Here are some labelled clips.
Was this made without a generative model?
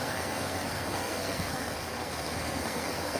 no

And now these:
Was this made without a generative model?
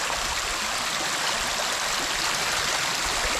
yes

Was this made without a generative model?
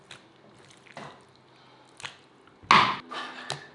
yes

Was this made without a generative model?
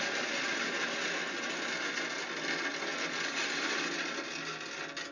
yes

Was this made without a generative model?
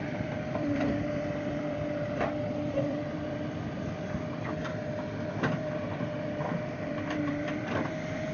no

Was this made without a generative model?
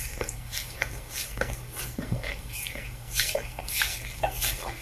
no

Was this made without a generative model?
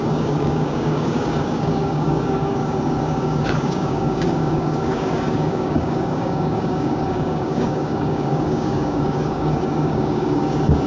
no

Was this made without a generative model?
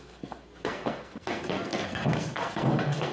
no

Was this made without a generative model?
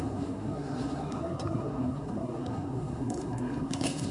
no